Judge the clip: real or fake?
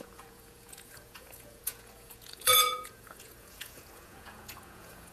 fake